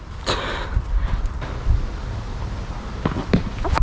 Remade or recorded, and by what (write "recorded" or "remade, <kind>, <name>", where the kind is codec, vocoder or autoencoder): recorded